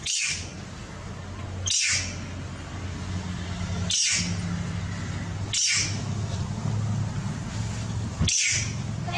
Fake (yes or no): no